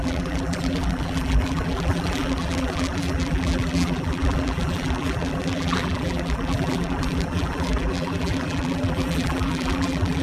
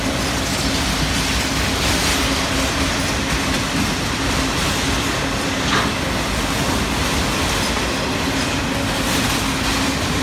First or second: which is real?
second